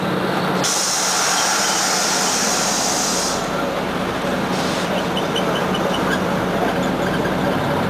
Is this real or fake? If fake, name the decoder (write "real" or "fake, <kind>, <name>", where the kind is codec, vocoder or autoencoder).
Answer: real